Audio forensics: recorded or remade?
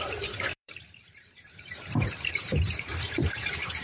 remade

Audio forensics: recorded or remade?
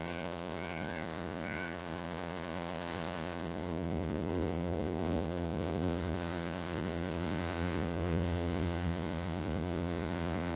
remade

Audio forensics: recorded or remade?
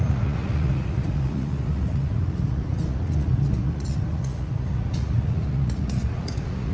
remade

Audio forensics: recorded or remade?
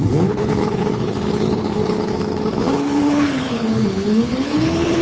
remade